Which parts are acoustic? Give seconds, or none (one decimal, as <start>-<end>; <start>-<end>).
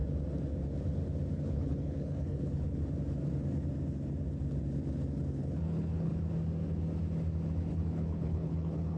0.0-1.3; 2.8-5.4; 6.1-7.7